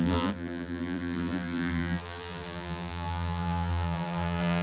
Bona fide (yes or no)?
no